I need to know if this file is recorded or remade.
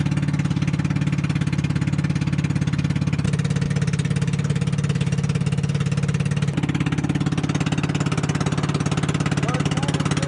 recorded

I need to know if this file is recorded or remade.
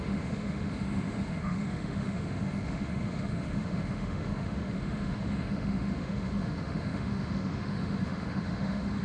remade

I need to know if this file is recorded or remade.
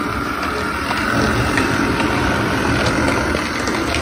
recorded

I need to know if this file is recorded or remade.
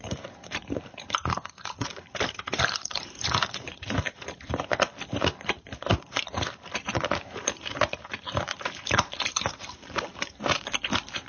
remade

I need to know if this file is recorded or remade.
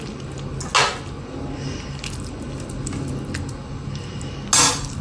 recorded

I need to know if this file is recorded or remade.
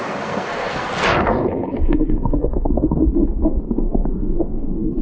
remade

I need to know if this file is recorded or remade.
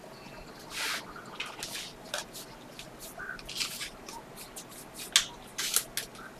recorded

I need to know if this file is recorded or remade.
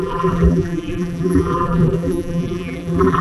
remade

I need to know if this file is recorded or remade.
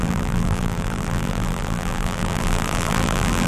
remade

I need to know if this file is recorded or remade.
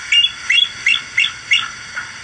recorded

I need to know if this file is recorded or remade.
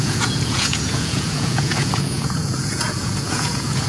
remade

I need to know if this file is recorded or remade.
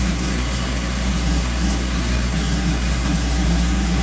remade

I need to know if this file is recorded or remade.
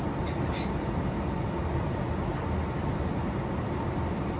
recorded